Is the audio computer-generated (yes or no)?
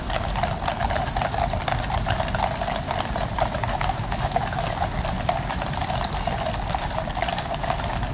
no